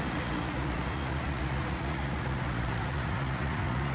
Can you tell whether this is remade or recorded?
remade